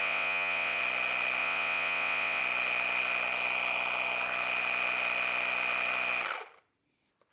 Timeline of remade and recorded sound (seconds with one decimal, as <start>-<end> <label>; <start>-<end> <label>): 0.0-0.8 remade; 0.8-1.4 recorded; 1.4-2.4 remade; 2.4-7.3 recorded